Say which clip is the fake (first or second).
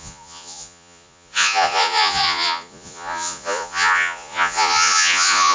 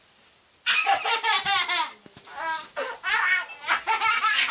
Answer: first